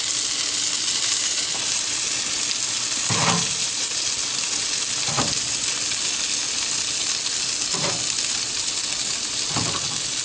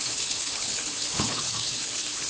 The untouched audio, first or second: first